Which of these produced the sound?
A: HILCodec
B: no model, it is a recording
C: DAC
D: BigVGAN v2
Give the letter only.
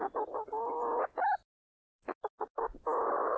B